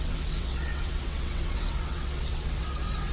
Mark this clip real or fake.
fake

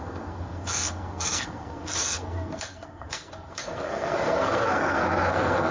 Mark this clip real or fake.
fake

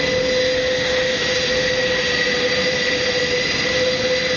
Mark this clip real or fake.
real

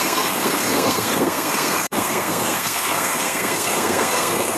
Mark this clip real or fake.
fake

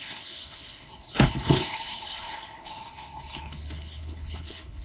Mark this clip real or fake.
fake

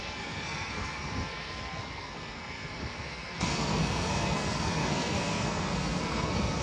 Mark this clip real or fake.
fake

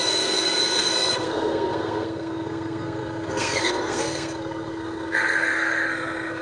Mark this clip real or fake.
fake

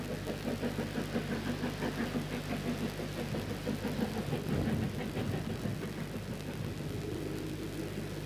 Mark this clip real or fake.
real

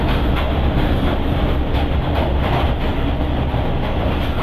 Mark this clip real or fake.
real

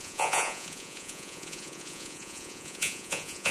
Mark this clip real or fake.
fake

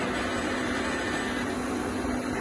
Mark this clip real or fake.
real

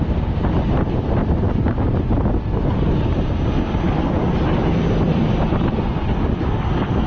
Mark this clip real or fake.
real